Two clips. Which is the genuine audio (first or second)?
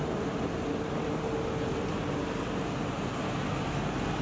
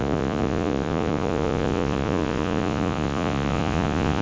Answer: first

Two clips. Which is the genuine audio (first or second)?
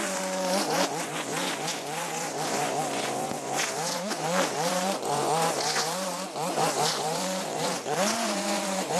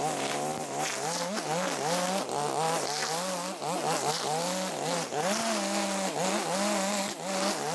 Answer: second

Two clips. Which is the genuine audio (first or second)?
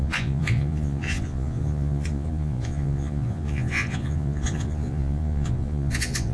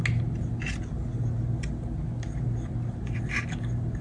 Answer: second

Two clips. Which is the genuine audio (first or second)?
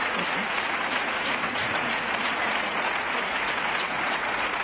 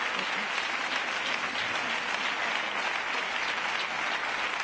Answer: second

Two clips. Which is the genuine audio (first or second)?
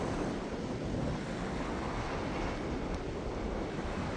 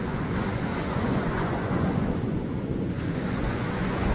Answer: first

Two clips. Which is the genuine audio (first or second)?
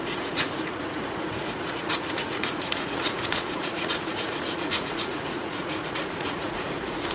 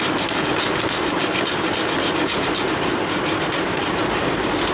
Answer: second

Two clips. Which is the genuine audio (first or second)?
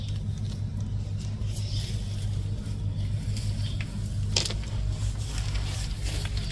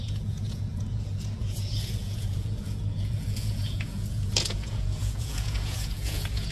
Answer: first